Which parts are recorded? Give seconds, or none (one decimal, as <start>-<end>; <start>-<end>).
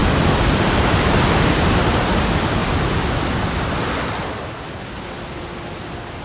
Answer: 0.0-6.2